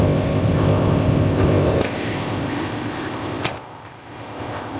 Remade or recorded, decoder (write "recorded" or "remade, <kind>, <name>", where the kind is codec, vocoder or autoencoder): remade, codec, ZipCodec